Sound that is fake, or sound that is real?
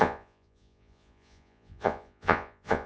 fake